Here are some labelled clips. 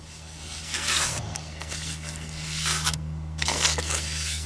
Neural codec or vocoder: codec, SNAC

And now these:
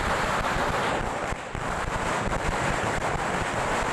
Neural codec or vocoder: none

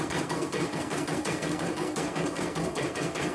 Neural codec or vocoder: codec, SNAC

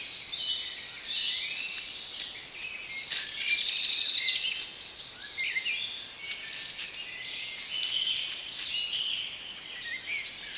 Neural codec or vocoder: none